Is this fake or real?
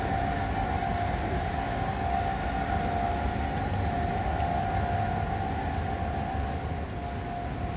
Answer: real